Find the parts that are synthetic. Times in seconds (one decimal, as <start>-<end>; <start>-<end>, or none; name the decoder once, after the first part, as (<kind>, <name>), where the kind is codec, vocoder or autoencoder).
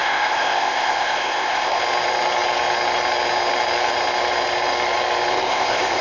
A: 0.0-1.8 (codec, ZipCodec); 5.3-6.0